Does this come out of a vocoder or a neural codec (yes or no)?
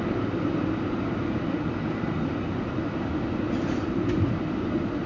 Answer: no